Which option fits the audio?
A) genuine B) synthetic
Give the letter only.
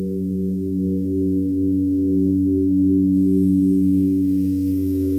B